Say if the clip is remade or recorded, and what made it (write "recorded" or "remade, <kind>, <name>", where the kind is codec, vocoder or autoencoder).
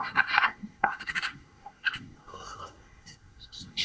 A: remade, codec, SNAC